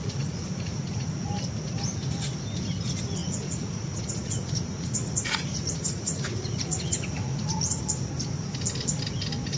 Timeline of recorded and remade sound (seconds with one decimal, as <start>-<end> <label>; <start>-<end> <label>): 0.0-1.3 remade; 1.3-3.2 recorded; 3.2-7.8 remade; 7.8-9.6 recorded